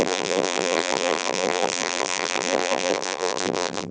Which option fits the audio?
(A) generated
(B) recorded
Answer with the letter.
A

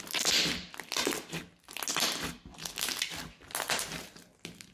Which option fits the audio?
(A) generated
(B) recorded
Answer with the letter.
B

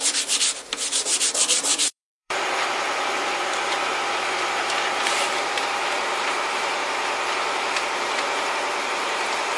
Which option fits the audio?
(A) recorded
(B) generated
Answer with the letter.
B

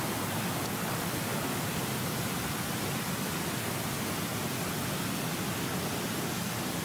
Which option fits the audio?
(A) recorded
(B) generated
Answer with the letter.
A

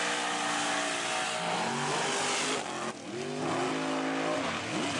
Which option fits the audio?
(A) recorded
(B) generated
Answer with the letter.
A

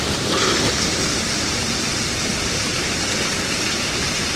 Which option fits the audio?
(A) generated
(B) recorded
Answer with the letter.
A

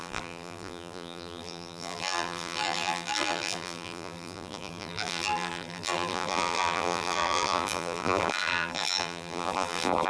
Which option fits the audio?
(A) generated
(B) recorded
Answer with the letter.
A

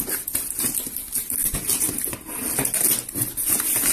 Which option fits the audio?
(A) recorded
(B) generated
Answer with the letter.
A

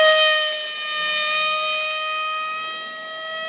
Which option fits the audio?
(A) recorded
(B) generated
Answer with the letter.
A